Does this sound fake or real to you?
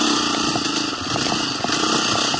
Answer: real